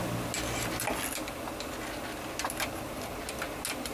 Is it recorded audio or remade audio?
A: recorded